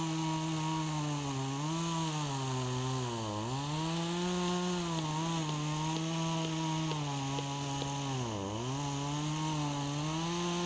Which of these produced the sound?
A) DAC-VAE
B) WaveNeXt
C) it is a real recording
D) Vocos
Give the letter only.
C